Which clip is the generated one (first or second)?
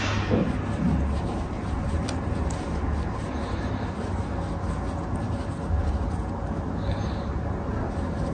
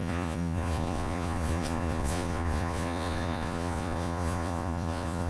second